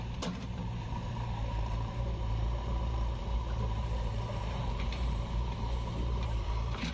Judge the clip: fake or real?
fake